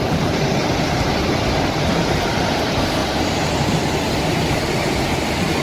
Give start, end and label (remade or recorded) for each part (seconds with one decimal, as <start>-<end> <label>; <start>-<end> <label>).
0.0-5.6 remade